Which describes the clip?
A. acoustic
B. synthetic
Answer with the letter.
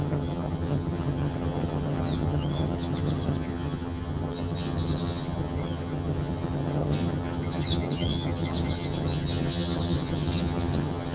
B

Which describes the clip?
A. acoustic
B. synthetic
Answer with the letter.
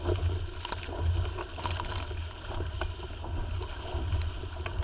A